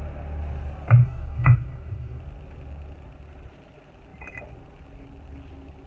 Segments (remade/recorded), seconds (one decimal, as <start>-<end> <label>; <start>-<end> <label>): 0.0-1.0 recorded; 1.0-2.2 remade; 2.2-5.9 recorded